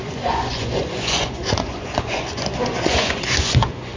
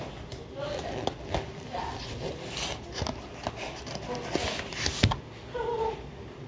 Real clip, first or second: second